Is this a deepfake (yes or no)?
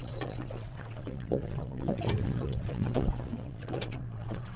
yes